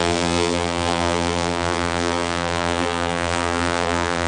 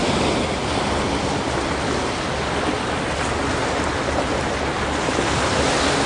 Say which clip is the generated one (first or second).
first